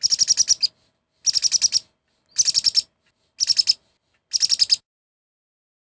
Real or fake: real